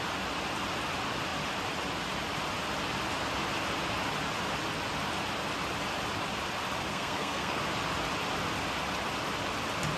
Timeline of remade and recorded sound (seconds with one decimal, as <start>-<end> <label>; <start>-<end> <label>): 0.0-6.9 recorded; 6.9-7.6 remade; 7.6-10.0 recorded